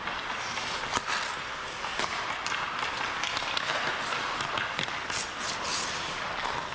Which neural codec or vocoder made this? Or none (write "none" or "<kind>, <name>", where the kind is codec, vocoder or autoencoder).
none